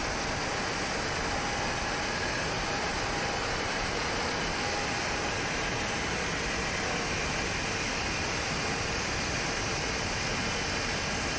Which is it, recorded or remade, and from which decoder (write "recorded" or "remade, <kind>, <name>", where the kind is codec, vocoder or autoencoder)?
recorded